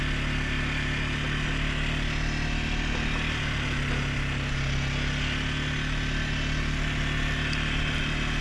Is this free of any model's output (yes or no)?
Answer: yes